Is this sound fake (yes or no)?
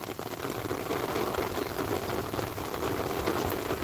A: no